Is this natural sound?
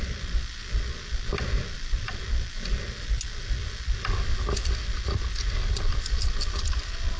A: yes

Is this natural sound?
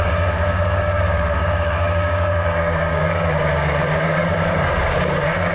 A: no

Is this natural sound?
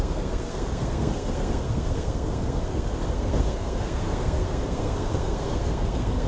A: no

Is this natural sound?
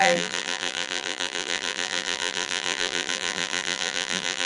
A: no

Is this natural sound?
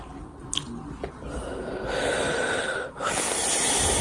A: yes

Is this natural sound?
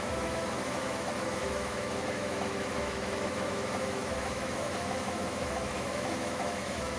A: no